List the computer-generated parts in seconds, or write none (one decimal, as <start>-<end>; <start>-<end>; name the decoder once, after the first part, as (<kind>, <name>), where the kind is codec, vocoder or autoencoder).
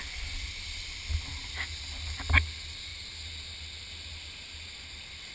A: none